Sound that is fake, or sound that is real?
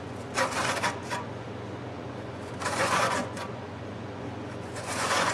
fake